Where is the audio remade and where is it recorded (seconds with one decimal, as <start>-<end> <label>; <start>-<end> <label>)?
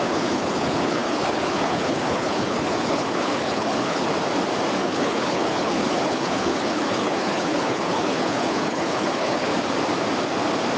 0.0-4.1 remade; 4.1-4.8 recorded; 4.8-9.5 remade; 9.5-10.8 recorded